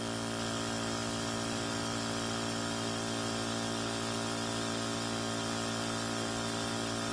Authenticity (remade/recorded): recorded